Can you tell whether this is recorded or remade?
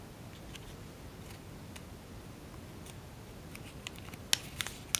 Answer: recorded